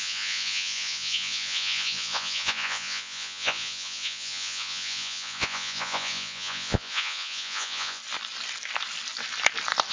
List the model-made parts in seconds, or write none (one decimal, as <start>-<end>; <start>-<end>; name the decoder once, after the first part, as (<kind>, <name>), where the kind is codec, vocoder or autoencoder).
0.0-8.0 (vocoder, Vocos)